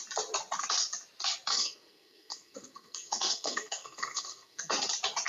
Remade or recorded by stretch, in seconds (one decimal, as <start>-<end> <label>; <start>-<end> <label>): 0.0-1.5 recorded; 1.5-4.7 remade; 4.7-5.3 recorded